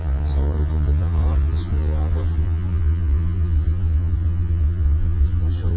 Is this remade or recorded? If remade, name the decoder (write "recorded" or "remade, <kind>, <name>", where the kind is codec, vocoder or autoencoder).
remade, vocoder, Vocos